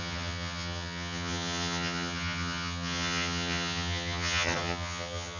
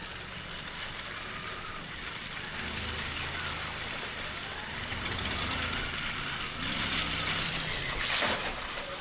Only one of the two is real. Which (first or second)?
second